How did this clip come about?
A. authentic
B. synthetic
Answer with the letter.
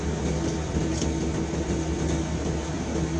A